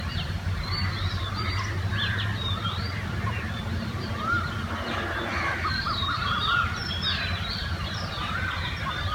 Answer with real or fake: fake